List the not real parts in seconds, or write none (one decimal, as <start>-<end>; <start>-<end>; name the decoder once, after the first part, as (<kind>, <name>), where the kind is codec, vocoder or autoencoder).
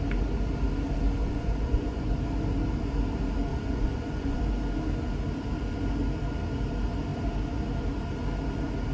1.2-2.2 (vocoder, Vocos); 3.5-4.4